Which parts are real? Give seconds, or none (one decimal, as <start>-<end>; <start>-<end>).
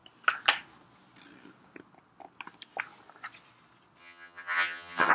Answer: 0.0-4.0